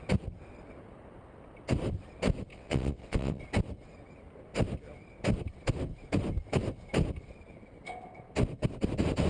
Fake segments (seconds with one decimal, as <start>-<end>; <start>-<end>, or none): 2.5-3.4